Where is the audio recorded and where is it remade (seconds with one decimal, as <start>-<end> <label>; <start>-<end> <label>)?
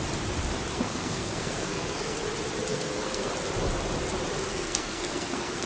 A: 0.0-0.7 recorded; 0.7-2.2 remade; 2.2-2.7 recorded; 2.7-3.3 remade; 3.3-4.5 recorded; 4.5-5.7 remade